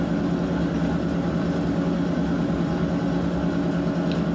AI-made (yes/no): no